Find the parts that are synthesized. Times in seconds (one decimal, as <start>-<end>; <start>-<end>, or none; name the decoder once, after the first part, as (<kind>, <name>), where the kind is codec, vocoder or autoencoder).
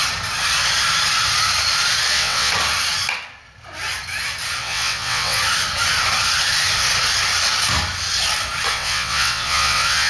2.1-2.5 (vocoder, WaveNeXt); 4.6-5.4; 8.7-10.1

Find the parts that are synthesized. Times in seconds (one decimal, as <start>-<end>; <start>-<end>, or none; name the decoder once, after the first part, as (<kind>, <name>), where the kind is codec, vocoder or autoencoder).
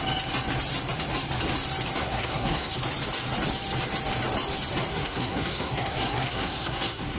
2.0-2.7 (codec, SNAC); 4.9-7.2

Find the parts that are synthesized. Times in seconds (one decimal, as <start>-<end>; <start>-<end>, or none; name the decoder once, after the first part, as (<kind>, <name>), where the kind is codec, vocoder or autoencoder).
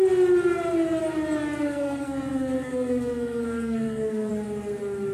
1.6-4.3 (codec, SNAC)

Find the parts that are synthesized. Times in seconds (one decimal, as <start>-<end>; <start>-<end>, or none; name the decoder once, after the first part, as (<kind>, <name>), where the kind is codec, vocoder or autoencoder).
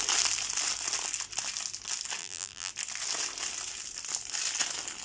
2.2-2.7 (vocoder, BigVGAN v2)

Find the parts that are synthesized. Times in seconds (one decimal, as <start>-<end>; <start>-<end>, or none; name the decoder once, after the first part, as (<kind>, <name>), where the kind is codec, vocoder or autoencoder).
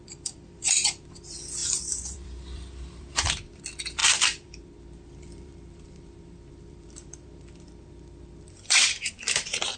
0.0-9.8 (vocoder, BigVGAN v2)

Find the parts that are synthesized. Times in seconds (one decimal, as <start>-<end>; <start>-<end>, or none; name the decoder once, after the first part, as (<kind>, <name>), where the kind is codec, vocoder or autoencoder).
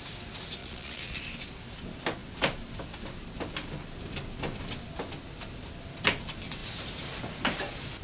0.6-1.2 (vocoder, Vocos)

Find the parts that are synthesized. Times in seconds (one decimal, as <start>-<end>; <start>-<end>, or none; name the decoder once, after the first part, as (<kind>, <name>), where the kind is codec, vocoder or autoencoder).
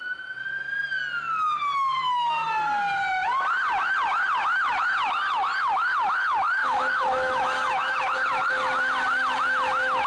6.6-8.0 (autoencoder, DAC-VAE)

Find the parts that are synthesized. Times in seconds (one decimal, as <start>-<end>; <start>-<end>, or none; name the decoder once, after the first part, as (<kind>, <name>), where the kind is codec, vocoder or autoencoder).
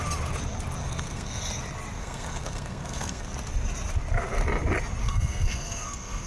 0.8-1.4 (codec, SNAC); 2.0-3.3; 5.0-6.3